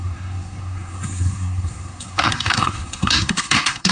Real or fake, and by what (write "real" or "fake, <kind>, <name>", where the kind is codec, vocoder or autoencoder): fake, codec, SNAC